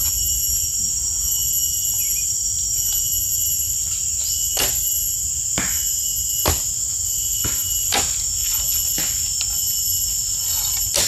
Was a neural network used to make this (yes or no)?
no